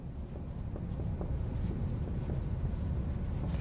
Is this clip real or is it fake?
real